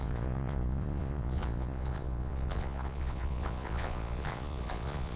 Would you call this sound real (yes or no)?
no